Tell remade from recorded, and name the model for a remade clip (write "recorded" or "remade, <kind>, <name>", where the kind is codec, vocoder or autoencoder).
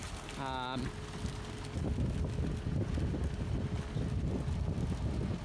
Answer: recorded